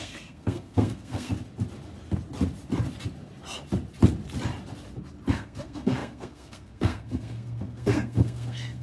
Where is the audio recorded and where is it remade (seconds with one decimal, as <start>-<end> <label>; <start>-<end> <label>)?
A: 0.0-1.3 remade; 1.3-5.3 recorded; 5.3-8.8 remade